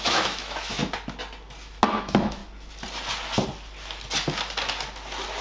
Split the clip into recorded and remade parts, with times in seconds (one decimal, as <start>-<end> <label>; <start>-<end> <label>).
0.0-0.8 remade; 0.8-2.0 recorded; 2.0-2.4 remade; 2.4-5.4 recorded